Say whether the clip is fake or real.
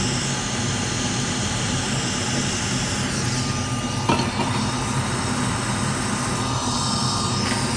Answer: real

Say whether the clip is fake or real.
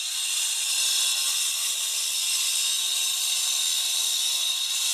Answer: fake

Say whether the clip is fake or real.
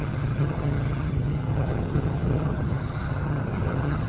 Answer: fake